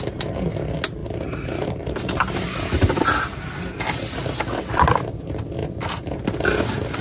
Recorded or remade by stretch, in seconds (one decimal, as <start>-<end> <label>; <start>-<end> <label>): 0.0-1.0 recorded; 1.0-3.4 remade; 3.4-7.0 recorded